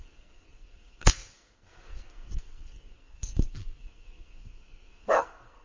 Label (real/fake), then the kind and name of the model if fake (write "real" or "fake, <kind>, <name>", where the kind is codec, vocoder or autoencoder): fake, codec, SNAC